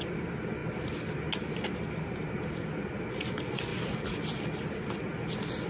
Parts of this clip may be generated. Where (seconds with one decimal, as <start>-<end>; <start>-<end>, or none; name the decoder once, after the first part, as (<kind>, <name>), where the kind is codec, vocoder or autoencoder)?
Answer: 0.0-0.6 (vocoder, BigVGAN v2); 3.3-3.7